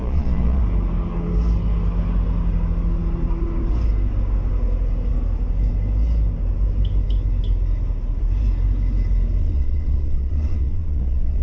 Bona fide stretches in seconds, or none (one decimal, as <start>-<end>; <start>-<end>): 0.6-9.4